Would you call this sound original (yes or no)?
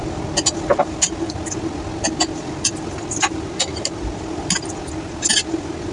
yes